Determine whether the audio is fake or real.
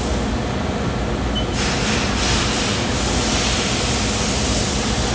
real